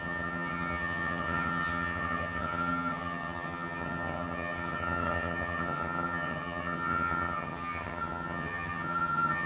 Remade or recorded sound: remade